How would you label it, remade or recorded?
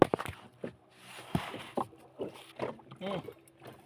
recorded